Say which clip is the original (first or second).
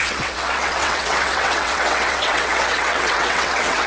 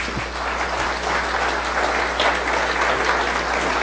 second